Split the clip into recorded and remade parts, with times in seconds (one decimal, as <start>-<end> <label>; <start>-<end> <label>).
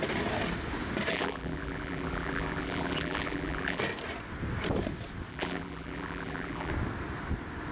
0.0-1.1 recorded; 1.1-3.8 remade; 3.8-5.3 recorded; 5.3-6.7 remade; 6.7-7.7 recorded